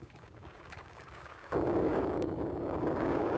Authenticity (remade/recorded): remade